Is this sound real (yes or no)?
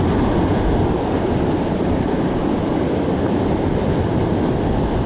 yes